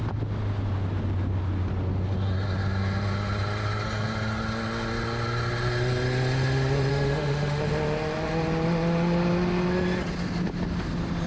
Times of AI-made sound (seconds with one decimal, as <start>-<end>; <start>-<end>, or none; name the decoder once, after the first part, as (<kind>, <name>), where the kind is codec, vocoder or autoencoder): 6.9-7.6 (autoencoder, DAC-VAE)